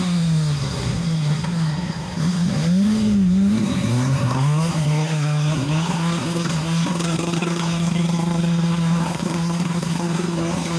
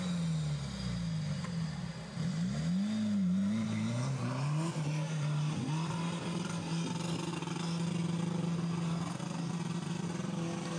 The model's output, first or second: first